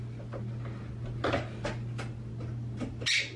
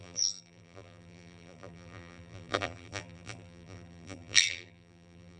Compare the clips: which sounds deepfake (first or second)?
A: second